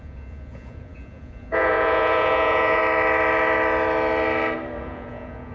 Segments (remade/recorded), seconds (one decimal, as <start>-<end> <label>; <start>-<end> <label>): 0.0-2.8 remade; 2.8-4.8 recorded; 4.8-5.5 remade